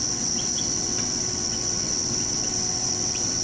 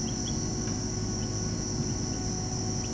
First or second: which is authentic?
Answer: second